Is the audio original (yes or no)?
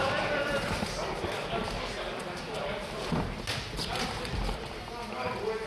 no